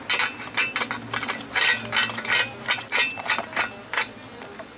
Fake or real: real